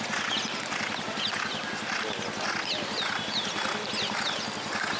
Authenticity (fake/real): real